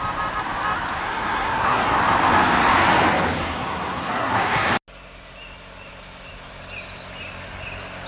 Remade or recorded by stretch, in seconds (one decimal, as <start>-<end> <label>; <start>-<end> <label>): 0.0-1.0 recorded; 1.0-2.0 remade; 2.0-3.4 recorded; 3.4-4.7 remade; 4.7-8.1 recorded